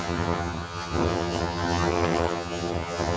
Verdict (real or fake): fake